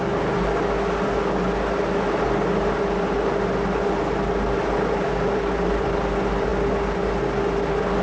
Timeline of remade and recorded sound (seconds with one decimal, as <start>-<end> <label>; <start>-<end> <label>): 0.0-8.0 recorded